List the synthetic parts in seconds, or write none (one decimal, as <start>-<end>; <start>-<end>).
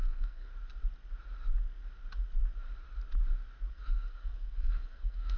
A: 0.0-0.5; 3.7-5.4